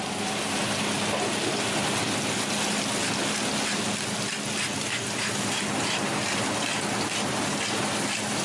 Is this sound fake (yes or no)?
no